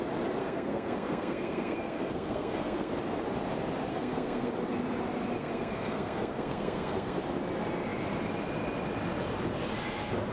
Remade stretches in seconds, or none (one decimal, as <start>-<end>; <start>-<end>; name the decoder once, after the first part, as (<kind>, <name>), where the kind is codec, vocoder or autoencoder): 0.4-2.9 (codec, SNAC); 3.9-4.5; 5.4-7.2

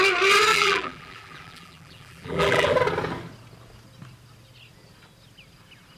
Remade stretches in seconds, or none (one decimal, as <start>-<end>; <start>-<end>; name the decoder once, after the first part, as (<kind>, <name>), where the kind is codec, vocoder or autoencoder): 0.5-2.7 (vocoder, BigVGAN v2)

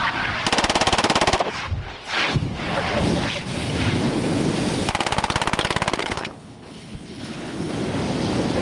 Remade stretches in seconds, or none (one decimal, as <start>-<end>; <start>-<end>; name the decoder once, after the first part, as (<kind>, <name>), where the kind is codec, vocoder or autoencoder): 6.0-7.7 (codec, HILCodec)

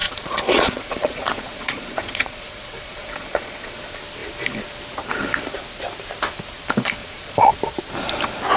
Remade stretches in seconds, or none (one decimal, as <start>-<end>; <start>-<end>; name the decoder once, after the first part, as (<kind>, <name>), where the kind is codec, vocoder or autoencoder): 0.0-3.8 (vocoder, Vocos); 7.0-7.5